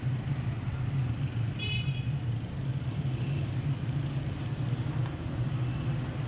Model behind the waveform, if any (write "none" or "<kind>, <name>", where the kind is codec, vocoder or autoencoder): none